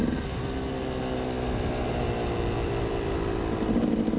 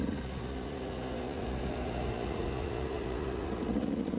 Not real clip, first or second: second